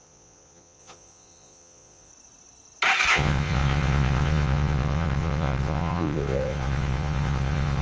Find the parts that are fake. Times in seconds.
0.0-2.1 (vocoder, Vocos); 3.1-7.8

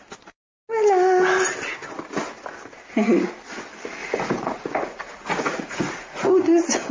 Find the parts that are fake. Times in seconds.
4.0-6.3 (vocoder, Vocos)

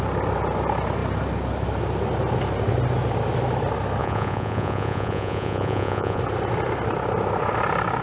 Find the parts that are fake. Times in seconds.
4.0-6.2 (vocoder, Vocos)

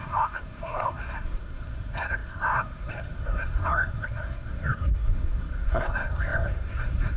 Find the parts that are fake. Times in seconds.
0.0-7.2 (codec, SNAC)

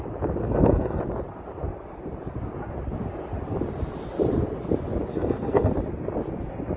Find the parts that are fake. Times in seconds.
0.4-1.0 (codec, SNAC); 5.1-5.7

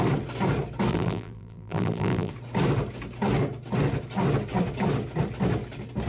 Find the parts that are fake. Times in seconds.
0.9-2.3 (vocoder, BigVGAN v2)